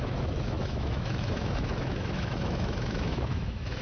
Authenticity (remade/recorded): remade